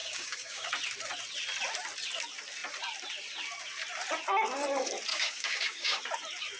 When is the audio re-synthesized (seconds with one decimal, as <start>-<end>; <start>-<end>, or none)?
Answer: 0.0-0.7; 5.1-6.0